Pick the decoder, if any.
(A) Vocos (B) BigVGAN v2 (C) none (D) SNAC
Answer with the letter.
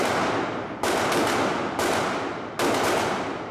C